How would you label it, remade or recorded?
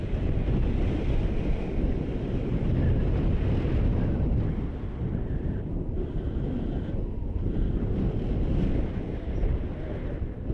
recorded